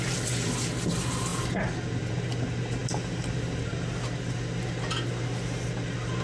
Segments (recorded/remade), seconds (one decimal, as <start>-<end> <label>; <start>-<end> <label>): 0.0-6.2 recorded